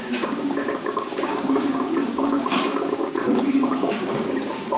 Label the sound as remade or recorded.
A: remade